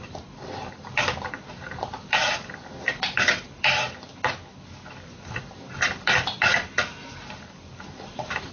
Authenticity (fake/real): fake